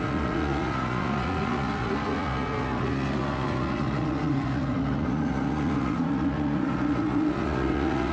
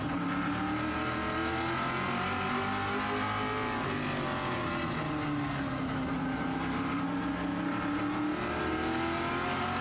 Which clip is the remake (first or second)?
first